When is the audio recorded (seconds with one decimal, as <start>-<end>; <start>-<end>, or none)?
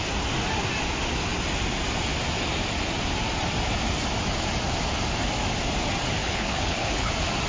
0.0-6.2; 7.1-7.5